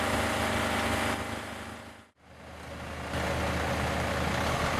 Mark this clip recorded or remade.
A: recorded